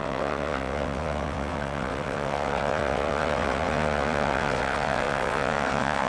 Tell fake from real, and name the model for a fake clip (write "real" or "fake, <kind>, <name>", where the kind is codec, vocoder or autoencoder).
fake, vocoder, WaveNeXt